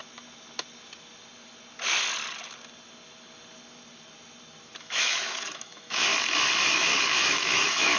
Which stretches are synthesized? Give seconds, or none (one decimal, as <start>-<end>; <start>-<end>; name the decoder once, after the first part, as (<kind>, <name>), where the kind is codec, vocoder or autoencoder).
4.8-6.1 (autoencoder, DAC-VAE); 6.7-8.0